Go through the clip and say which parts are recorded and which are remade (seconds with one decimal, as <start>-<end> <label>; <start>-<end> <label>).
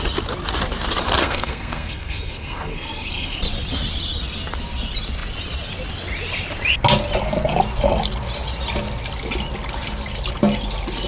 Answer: 0.0-1.2 recorded; 1.2-3.4 remade; 3.4-11.1 recorded